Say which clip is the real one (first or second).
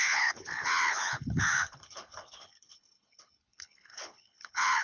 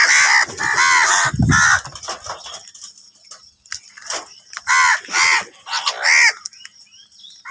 second